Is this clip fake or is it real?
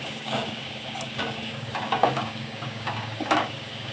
fake